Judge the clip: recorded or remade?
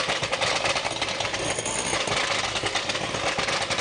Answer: recorded